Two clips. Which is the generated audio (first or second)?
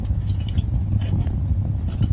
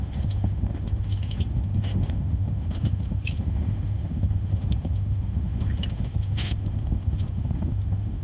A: second